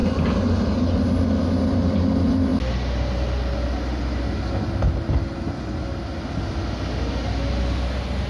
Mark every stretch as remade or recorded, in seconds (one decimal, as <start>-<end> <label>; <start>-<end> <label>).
0.0-8.3 recorded